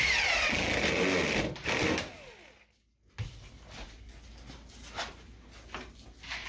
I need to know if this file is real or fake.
real